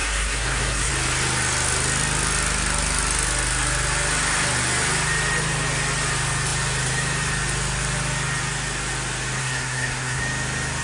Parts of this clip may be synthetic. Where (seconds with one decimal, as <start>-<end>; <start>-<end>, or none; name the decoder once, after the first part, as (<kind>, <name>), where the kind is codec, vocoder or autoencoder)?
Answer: 0.0-0.9 (codec, SNAC); 9.4-10.2